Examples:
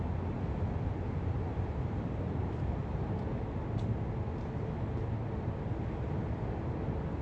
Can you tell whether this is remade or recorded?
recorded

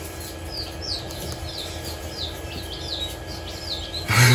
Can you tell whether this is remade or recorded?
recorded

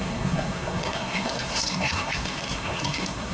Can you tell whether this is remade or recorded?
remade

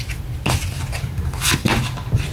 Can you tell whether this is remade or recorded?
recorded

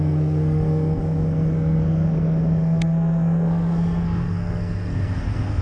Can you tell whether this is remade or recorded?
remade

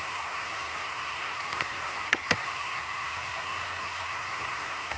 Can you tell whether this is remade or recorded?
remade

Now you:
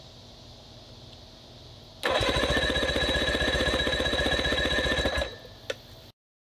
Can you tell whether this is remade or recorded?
recorded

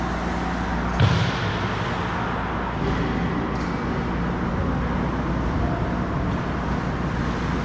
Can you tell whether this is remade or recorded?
recorded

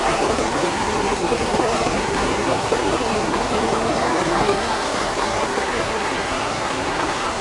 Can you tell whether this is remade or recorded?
remade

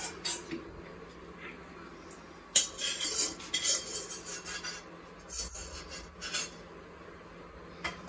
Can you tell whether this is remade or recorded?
recorded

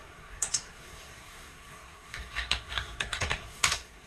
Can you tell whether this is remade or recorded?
remade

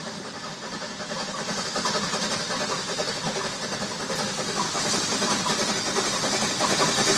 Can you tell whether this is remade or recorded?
recorded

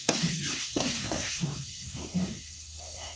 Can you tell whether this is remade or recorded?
remade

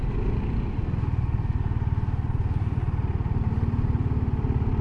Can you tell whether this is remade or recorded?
recorded